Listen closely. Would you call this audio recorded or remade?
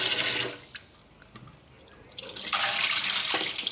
recorded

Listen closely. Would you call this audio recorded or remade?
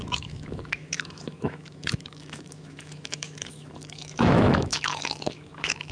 remade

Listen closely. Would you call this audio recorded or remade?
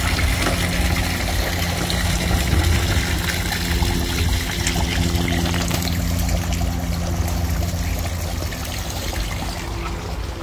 recorded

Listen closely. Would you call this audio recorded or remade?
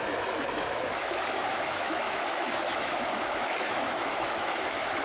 remade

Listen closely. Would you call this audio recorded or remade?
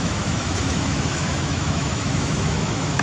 remade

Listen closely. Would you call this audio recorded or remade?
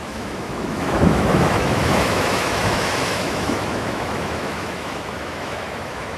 remade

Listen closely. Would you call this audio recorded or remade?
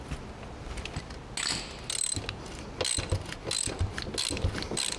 recorded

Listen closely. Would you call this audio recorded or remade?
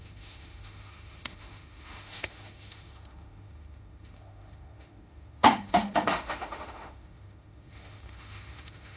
remade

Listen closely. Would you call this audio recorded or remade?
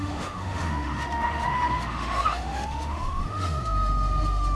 remade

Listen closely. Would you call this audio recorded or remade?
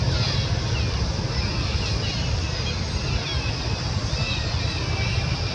recorded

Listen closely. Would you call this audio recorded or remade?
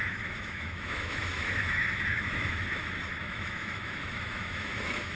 remade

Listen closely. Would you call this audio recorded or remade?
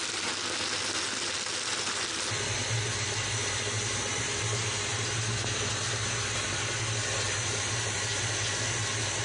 recorded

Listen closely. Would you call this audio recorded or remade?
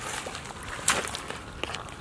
recorded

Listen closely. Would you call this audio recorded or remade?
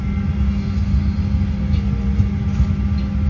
recorded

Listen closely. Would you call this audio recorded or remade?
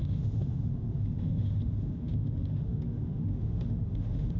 remade